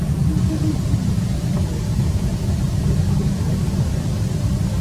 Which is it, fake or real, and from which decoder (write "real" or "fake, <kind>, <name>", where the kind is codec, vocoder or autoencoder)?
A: real